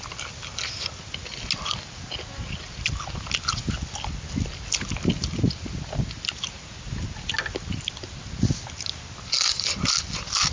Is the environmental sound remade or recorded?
recorded